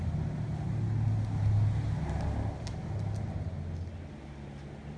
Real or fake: real